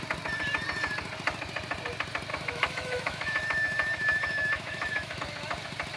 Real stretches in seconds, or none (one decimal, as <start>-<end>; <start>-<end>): 0.0-2.3; 5.2-6.0

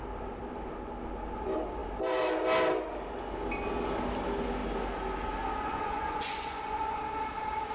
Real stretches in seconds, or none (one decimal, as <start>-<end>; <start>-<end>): 0.0-5.7; 7.0-7.7

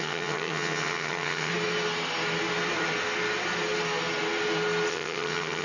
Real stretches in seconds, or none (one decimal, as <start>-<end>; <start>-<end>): 1.5-4.9

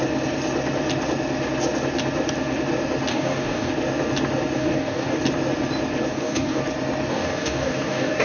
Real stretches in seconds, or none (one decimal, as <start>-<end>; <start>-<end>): 0.0-3.1; 3.7-4.6; 5.2-6.1; 6.6-7.1

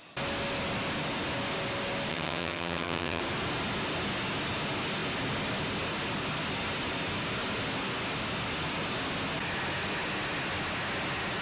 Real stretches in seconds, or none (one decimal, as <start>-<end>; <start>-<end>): 0.0-2.1; 3.2-11.4

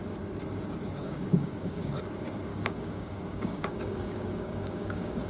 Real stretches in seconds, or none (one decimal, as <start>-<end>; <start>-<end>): 0.0-1.0; 1.9-2.5

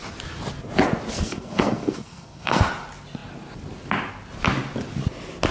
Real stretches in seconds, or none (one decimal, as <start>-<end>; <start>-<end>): 0.0-1.1; 2.6-5.5

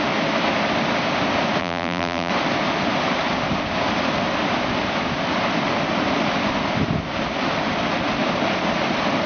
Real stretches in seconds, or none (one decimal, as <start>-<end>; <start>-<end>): 0.0-1.6; 2.3-9.3